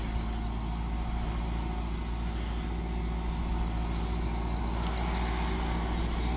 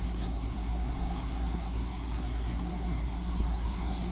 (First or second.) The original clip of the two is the first